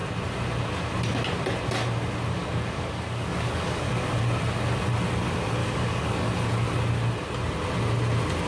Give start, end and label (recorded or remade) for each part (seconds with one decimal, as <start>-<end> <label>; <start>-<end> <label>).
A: 0.0-2.4 recorded; 2.4-4.1 remade; 4.1-5.6 recorded; 5.6-6.3 remade; 6.3-8.5 recorded